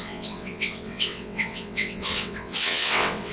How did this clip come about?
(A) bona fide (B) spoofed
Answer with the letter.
B